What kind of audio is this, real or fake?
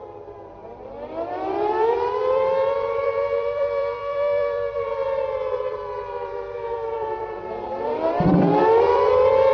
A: fake